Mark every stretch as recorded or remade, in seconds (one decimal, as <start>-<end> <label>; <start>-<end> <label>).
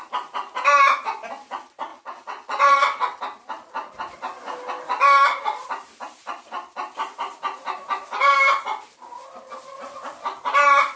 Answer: 0.0-1.9 recorded; 1.9-3.2 remade; 3.2-11.0 recorded